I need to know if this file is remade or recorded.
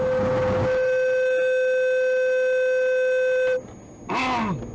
recorded